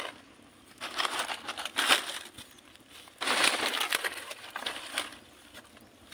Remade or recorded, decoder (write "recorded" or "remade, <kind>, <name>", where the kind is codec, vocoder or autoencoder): recorded